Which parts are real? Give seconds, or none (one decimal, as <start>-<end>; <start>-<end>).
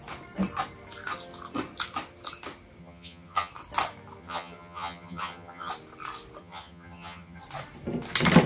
0.0-2.8; 3.5-4.2; 5.7-6.4; 7.4-8.5